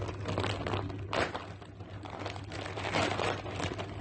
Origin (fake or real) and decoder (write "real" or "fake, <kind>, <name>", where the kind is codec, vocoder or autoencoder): real